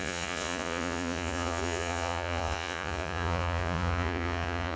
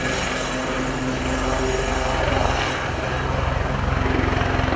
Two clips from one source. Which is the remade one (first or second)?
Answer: first